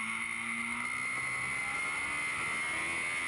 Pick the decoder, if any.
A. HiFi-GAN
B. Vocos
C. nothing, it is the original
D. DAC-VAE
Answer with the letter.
C